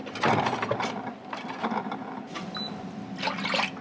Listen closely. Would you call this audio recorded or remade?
recorded